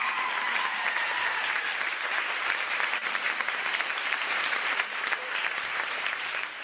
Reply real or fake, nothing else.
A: fake